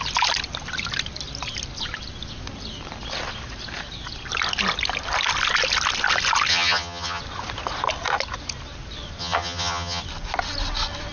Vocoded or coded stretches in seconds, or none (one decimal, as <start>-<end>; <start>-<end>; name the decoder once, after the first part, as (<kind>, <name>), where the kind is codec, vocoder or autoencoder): 6.5-7.2 (vocoder, HiFi-GAN); 9.2-10.0